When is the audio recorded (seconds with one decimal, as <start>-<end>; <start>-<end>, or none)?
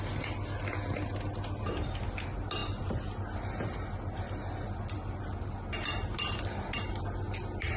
0.0-7.8